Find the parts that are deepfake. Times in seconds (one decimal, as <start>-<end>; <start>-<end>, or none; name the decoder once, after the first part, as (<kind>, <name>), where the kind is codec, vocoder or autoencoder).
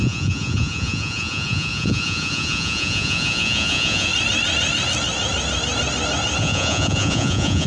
0.0-4.1 (vocoder, Vocos); 6.4-7.7